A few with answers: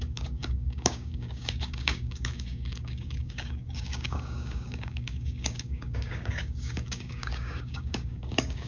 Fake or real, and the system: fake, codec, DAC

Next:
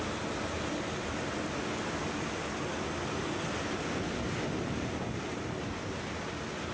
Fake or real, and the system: real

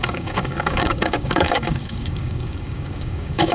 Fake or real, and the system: fake, codec, DAC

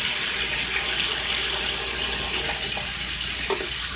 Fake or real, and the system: real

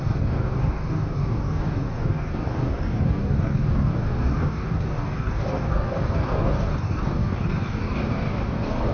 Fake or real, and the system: fake, codec, DAC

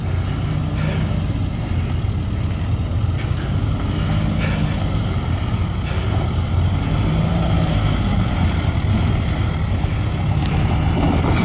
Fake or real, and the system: real